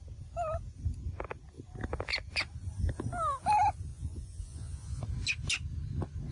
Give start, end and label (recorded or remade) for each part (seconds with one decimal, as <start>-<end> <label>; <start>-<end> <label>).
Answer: 0.0-3.9 recorded; 3.9-5.0 remade; 5.0-6.3 recorded